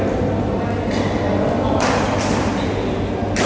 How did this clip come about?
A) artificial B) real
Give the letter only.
B